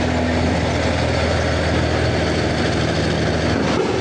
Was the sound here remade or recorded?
recorded